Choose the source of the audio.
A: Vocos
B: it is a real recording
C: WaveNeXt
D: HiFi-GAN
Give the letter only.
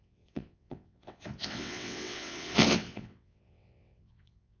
C